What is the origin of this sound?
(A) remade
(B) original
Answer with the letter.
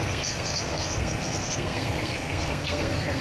A